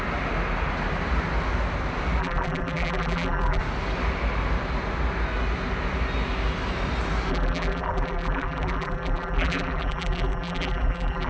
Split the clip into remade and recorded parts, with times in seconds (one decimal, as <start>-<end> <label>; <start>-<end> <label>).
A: 0.0-2.2 recorded; 2.2-3.6 remade; 3.6-7.3 recorded; 7.3-11.3 remade